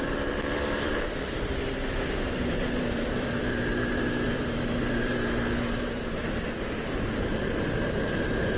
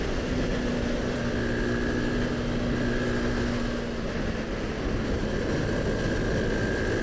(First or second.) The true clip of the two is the second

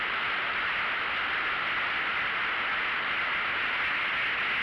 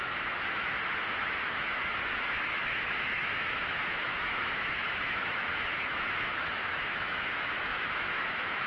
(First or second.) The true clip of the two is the first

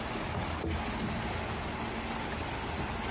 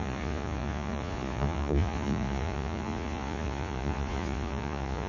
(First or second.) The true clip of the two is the first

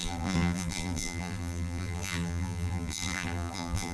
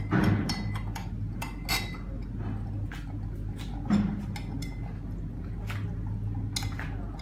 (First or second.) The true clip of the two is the second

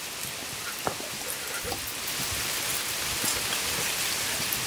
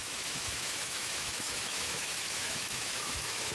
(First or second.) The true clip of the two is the first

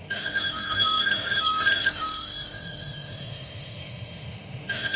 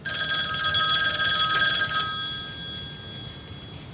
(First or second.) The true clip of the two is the second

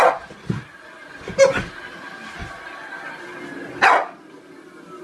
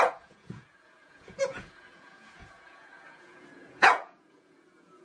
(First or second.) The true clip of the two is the first